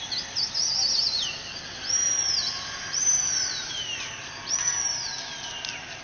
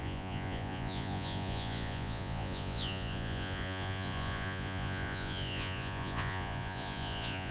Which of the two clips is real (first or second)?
first